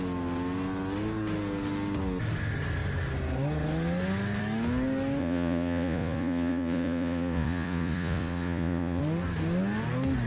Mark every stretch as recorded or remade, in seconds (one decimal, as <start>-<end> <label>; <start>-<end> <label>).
0.0-5.2 recorded; 5.2-9.0 remade; 9.0-10.3 recorded